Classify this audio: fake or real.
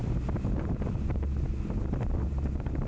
real